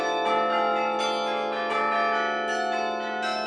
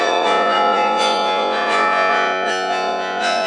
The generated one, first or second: second